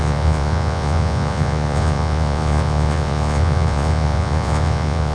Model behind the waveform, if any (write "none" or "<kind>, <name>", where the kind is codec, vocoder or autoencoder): vocoder, Vocos